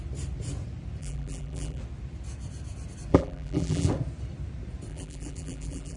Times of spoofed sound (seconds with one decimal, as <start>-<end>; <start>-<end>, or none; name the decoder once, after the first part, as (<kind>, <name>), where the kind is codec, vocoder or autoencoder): 1.0-1.8 (vocoder, BigVGAN v2); 3.1-3.9; 4.9-6.0